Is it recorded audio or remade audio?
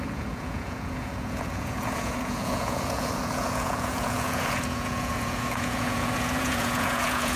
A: remade